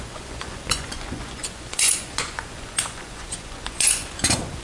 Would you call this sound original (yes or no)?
no